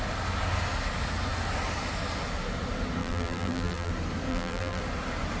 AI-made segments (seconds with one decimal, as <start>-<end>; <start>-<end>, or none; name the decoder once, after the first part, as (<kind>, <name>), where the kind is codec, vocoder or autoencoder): 3.0-3.9 (vocoder, BigVGAN v2); 4.3-4.8